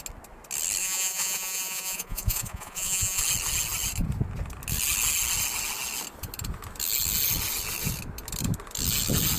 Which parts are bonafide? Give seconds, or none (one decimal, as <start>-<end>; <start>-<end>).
0.0-0.8; 3.2-9.4